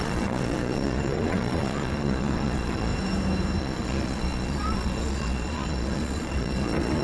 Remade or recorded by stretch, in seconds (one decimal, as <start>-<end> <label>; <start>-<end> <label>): 0.0-2.9 remade; 2.9-3.6 recorded; 3.6-7.0 remade